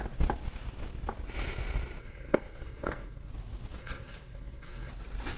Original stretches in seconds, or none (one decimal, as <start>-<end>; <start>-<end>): 0.0-2.0; 3.3-3.8; 4.9-5.4